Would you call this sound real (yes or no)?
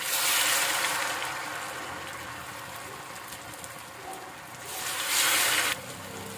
yes